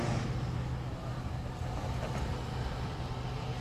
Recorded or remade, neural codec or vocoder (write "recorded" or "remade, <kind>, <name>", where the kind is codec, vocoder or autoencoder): recorded